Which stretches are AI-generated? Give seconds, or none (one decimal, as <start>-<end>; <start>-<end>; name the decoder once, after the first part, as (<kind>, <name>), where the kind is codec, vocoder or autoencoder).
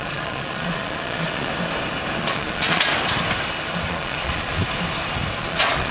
0.0-1.5 (vocoder, Vocos); 2.2-2.9; 3.9-4.6; 5.4-5.9